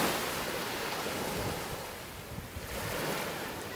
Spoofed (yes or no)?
no